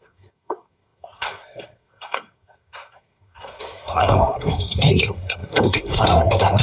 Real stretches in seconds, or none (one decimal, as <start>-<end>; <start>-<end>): none